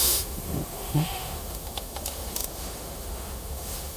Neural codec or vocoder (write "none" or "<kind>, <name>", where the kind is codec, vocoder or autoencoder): autoencoder, DAC-VAE